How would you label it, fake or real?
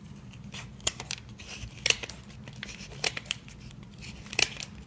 real